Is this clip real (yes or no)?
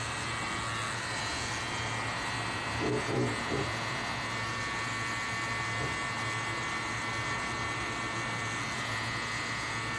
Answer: yes